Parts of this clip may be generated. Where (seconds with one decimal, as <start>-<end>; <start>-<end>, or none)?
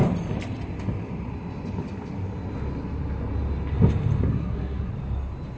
4.3-4.9